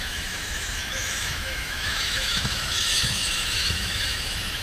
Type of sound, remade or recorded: remade